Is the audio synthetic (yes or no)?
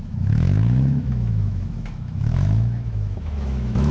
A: yes